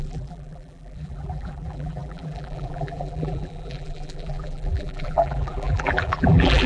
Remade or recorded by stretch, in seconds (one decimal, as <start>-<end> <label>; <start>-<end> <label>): 0.0-6.7 remade